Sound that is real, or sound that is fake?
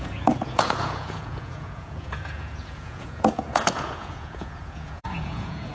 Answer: fake